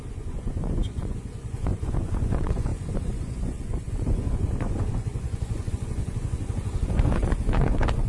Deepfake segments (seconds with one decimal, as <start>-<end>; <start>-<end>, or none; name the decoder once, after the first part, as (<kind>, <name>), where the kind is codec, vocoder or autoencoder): 0.0-8.1 (vocoder, Vocos)